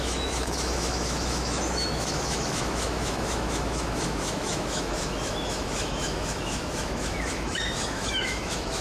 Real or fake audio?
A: fake